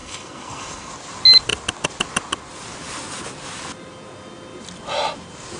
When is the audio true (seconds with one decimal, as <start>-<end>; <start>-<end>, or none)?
0.9-5.6